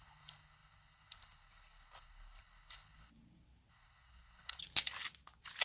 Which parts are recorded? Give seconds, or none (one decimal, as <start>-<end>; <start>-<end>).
3.1-3.7; 4.6-5.6